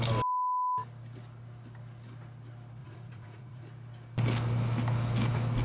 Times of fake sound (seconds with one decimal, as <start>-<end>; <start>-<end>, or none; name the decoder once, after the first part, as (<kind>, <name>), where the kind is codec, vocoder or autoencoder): 2.8-3.6 (vocoder, Vocos)